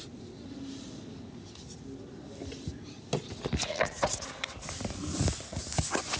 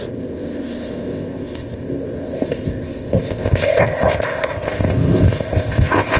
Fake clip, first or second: second